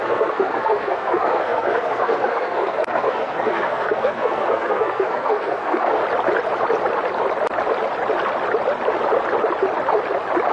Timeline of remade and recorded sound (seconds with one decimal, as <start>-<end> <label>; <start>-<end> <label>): 0.0-6.0 remade; 6.0-10.5 recorded